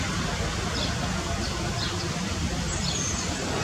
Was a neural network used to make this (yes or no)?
no